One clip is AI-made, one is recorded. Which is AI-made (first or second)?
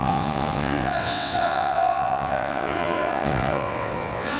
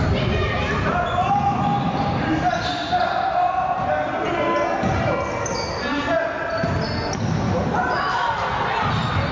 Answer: first